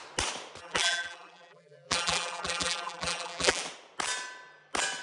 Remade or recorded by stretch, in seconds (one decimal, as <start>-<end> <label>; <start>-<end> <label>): 0.0-0.6 recorded; 0.6-3.6 remade; 3.6-5.0 recorded